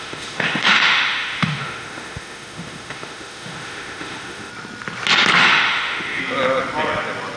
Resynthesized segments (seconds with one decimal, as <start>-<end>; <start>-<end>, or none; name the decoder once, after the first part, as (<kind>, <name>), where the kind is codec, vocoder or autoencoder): 0.0-4.5 (autoencoder, DAC-VAE); 5.4-6.2